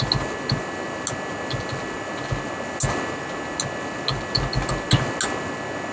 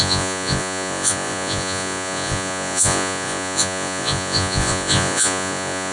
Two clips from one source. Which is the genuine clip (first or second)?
first